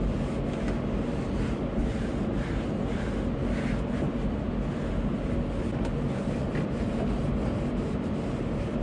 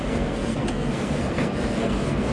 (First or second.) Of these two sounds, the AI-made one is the second